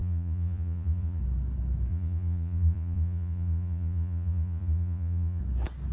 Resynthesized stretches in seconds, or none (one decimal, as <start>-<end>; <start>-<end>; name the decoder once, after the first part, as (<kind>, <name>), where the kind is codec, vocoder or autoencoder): 0.0-1.2 (vocoder, Vocos); 1.9-5.4